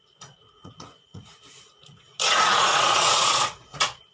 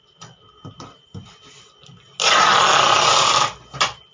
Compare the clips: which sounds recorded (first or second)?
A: second